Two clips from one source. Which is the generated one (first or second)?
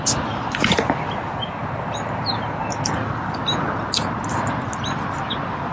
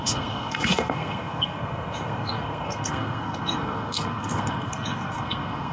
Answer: second